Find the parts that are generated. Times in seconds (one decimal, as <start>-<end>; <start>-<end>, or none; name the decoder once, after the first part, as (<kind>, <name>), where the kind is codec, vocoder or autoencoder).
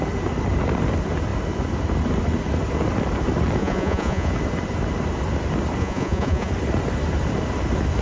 3.6-4.3 (vocoder, Vocos); 5.8-6.5